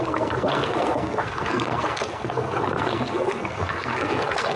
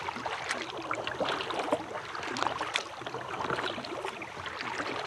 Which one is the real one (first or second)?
second